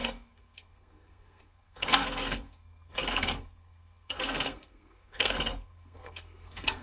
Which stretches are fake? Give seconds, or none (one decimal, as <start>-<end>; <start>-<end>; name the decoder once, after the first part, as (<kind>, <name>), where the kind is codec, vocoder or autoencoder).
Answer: 0.0-6.8 (codec, SNAC)